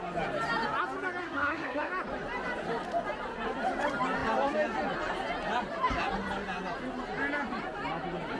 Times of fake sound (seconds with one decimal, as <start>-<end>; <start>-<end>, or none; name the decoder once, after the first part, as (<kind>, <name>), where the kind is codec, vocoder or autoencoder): 1.2-1.9 (codec, SNAC)